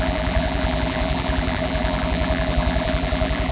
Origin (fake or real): fake